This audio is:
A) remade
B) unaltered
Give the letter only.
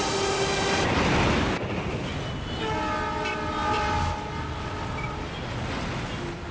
B